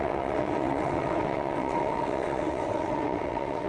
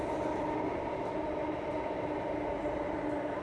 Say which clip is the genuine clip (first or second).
second